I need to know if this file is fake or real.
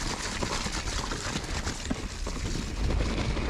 real